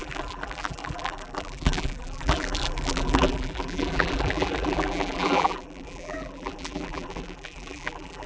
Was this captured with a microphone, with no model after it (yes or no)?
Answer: no